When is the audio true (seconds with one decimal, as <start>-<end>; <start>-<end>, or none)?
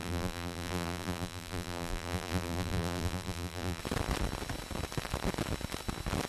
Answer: 3.8-6.3